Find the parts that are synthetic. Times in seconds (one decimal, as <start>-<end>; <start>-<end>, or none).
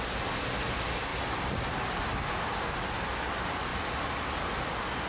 3.7-4.6